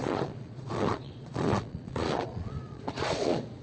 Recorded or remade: remade